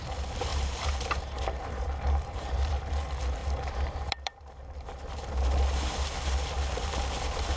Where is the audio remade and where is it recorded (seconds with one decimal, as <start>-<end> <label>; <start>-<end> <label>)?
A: 0.0-0.5 recorded; 0.5-2.7 remade; 2.7-3.4 recorded; 3.4-4.5 remade; 4.5-7.6 recorded